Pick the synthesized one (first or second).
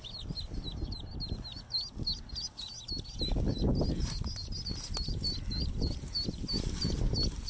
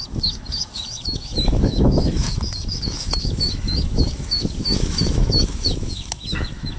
second